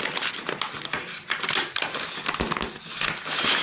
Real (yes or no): yes